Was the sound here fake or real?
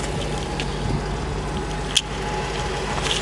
real